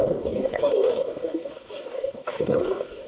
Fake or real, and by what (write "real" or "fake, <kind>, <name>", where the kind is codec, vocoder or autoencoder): fake, codec, DAC